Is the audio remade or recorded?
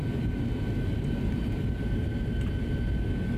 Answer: recorded